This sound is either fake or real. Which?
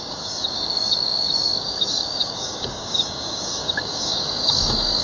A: fake